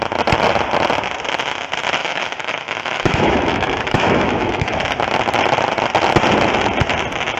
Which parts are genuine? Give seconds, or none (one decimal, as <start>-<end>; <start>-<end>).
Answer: 0.0-2.0; 4.8-7.4